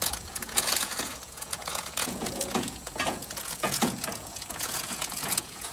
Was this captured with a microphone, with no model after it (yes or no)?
no